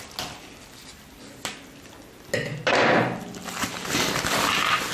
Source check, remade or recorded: recorded